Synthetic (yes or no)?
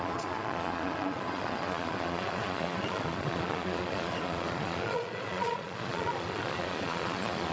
yes